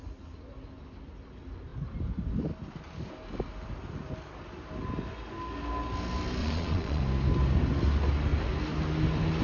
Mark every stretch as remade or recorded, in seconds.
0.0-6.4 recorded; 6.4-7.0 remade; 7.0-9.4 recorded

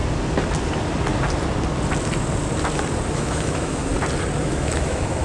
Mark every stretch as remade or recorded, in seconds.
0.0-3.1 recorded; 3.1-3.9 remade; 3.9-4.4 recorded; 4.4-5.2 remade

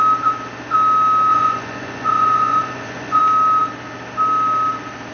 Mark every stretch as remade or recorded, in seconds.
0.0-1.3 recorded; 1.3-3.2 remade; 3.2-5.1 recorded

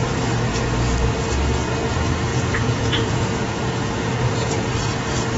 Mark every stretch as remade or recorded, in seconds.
0.0-2.3 recorded; 2.3-4.1 remade; 4.1-5.4 recorded